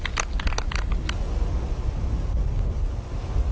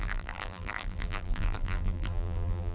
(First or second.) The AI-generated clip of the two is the second